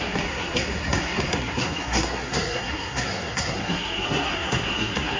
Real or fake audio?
fake